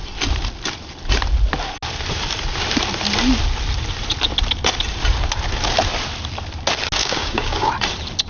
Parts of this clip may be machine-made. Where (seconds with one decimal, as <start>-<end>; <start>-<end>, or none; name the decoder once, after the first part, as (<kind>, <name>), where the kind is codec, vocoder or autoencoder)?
7.0-7.7 (codec, DAC)